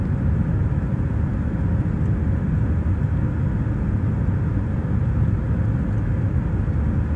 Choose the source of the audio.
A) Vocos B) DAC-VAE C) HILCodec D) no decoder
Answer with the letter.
D